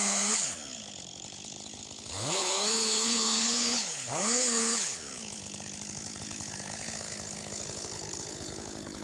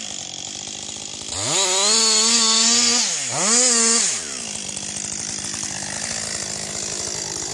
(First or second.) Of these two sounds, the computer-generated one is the first